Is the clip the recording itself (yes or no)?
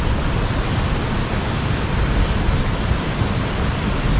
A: yes